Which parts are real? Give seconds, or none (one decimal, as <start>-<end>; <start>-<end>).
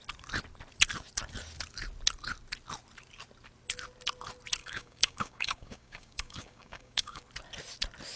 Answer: 0.0-4.6; 7.2-8.2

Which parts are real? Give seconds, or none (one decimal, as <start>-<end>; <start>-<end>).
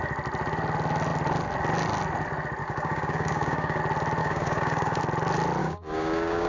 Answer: 0.0-2.6; 3.8-4.2; 5.0-5.6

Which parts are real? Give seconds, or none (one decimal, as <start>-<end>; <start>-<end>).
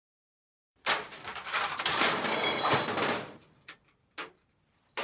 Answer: none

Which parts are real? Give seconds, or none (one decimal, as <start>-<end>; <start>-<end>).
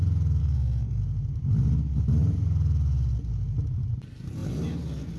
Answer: 0.0-0.4; 1.0-5.2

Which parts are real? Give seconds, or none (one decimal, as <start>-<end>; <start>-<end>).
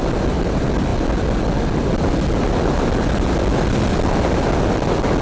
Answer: 0.0-5.2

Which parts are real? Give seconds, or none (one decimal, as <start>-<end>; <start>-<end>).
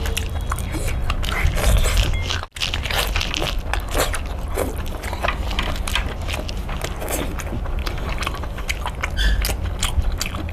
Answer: 0.0-10.5